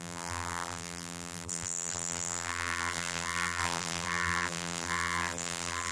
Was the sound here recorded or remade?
remade